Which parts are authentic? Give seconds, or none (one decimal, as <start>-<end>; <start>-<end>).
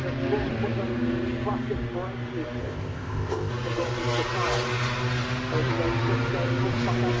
0.0-2.6; 3.5-7.2